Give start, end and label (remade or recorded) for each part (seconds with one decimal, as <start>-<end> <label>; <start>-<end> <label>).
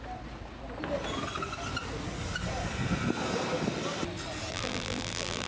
0.0-4.5 recorded; 4.5-5.5 remade